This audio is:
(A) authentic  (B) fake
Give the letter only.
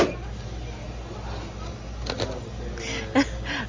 A